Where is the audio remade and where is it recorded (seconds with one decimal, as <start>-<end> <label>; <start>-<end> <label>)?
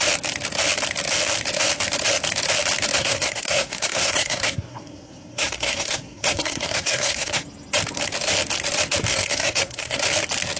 0.0-3.0 recorded; 3.0-7.4 remade; 7.4-9.1 recorded; 9.1-10.0 remade; 10.0-10.6 recorded